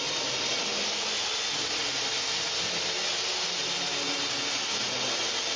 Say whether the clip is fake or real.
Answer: real